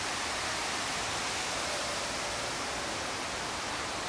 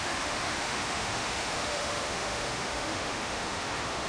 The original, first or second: first